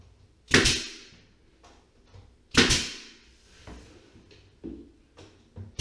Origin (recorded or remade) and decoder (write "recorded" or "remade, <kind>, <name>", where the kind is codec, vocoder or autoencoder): recorded